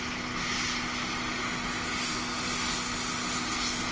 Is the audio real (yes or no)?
yes